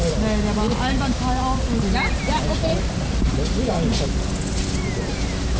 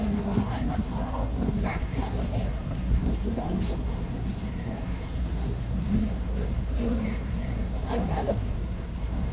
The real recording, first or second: first